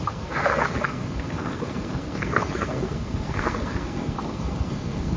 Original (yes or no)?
no